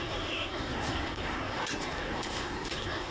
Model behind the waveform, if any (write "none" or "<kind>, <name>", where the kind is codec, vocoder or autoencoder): codec, SNAC